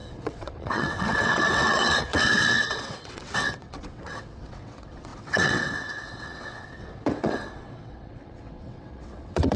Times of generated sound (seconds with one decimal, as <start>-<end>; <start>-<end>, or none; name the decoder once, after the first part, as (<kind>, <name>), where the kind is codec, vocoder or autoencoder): 0.0-9.6 (vocoder, WaveNeXt)